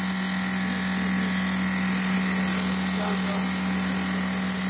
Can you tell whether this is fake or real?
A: real